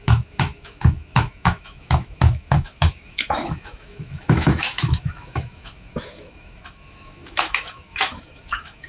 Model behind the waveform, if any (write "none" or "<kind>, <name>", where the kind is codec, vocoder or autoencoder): autoencoder, DAC-VAE